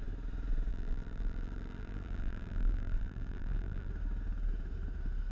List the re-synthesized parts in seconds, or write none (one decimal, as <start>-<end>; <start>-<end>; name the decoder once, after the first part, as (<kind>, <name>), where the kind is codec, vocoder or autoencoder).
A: 0.7-3.9 (vocoder, BigVGAN v2)